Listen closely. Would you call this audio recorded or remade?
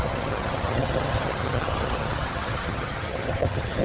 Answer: remade